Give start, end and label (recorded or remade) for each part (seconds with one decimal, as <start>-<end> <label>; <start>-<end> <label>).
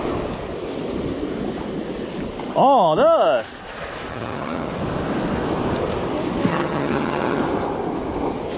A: 0.0-4.1 recorded; 4.1-4.7 remade; 4.7-6.5 recorded; 6.5-7.4 remade; 7.4-8.6 recorded